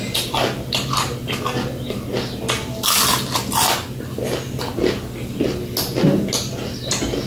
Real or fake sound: real